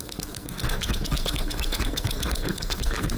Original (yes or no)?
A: no